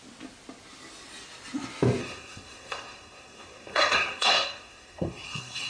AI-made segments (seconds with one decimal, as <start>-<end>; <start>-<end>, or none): 2.0-5.7